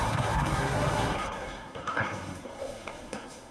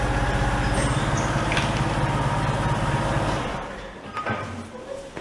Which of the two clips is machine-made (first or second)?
first